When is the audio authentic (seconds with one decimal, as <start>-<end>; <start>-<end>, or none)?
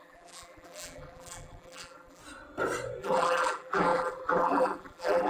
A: 2.2-3.0